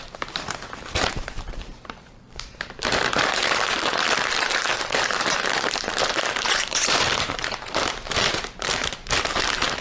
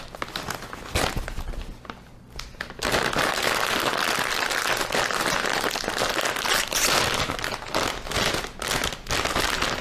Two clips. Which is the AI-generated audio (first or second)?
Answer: first